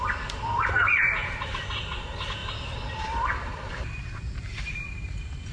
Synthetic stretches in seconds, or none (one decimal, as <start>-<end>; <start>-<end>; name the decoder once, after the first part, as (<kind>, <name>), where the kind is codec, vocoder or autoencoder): 0.0-1.2 (vocoder, BigVGAN v2); 2.0-2.4; 2.9-5.5